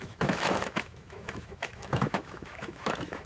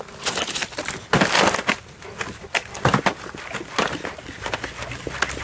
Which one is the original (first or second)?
second